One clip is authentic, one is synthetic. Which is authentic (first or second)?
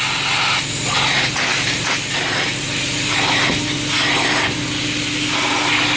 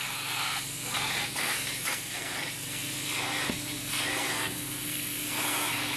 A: first